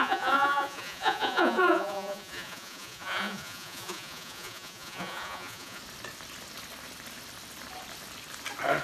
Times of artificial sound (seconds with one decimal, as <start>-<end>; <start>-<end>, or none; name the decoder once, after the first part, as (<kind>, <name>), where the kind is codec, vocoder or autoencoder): 0.0-5.8 (vocoder, Vocos)